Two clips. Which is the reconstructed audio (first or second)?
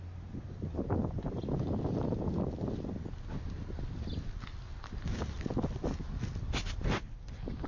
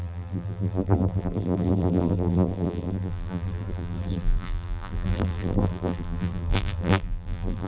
second